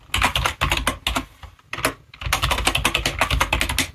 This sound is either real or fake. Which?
real